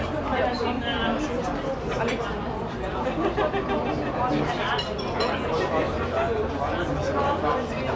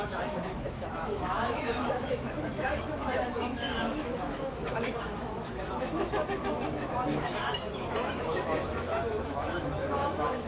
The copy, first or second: second